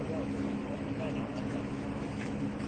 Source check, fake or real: fake